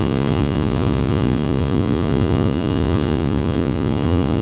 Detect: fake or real fake